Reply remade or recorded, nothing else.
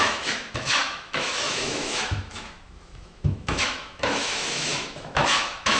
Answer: remade